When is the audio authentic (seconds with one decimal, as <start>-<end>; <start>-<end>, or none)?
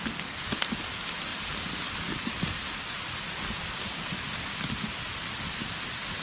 0.0-6.2